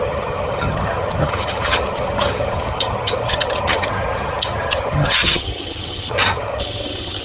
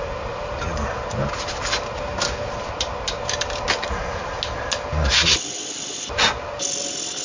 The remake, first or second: first